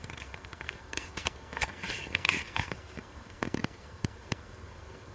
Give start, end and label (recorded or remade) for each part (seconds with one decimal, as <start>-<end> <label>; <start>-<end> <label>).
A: 0.0-5.1 remade

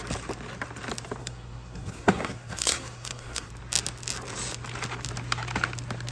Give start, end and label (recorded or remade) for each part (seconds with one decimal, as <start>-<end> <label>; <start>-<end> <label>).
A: 0.0-1.2 recorded; 1.2-3.5 remade; 3.5-6.1 recorded

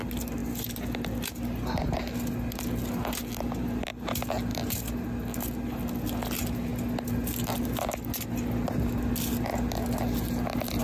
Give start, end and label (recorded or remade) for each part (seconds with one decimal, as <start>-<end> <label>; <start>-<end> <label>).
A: 0.0-10.8 recorded

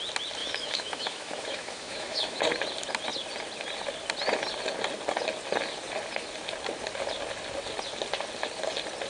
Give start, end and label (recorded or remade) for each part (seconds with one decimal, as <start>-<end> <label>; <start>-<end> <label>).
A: 0.0-0.4 recorded; 0.4-2.4 remade; 2.4-9.1 recorded

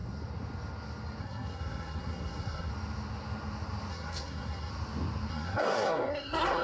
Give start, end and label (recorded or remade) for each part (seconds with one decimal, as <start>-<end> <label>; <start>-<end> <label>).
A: 0.0-1.2 recorded; 1.2-2.7 remade; 2.7-3.9 recorded; 3.9-4.7 remade; 4.7-5.3 recorded; 5.3-6.6 remade

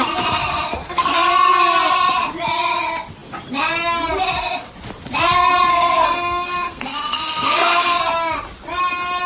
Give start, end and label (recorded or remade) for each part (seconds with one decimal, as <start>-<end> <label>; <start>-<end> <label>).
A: 0.0-0.8 recorded; 0.8-1.3 remade; 1.3-5.7 recorded; 5.7-8.0 remade; 8.0-9.3 recorded